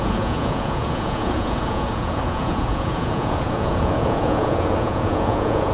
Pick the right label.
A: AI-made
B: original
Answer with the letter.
A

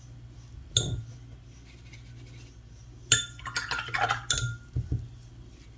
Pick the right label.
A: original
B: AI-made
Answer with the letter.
A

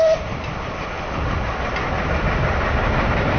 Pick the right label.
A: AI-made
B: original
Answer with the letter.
B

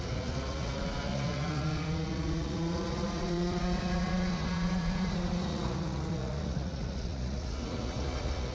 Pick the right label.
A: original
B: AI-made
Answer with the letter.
B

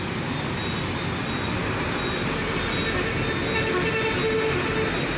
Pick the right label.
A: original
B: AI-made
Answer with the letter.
A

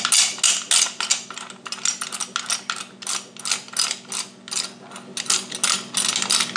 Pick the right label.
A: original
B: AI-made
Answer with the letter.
A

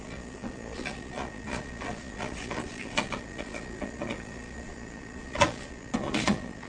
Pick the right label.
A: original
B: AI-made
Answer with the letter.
B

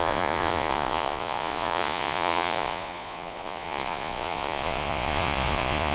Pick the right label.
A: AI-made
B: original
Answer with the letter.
A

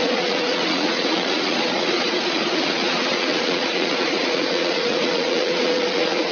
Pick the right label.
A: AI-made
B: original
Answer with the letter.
A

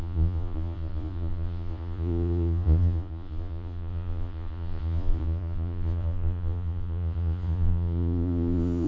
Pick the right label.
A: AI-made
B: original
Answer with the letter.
A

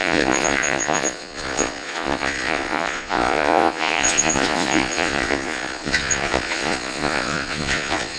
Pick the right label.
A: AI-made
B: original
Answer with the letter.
A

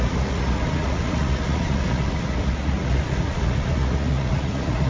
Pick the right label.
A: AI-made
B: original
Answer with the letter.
A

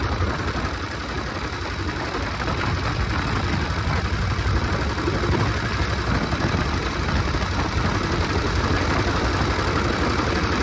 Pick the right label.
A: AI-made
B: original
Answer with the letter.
B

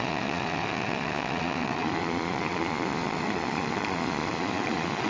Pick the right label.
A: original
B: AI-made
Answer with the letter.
B